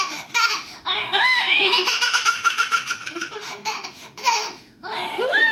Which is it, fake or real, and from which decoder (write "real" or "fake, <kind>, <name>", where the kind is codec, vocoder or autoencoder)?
fake, autoencoder, DAC-VAE